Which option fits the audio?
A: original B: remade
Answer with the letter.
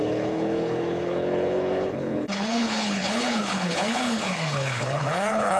B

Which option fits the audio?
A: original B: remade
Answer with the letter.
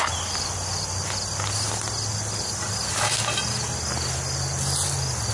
A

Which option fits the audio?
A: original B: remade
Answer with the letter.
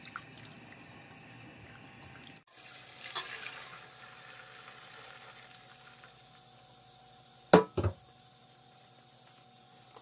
A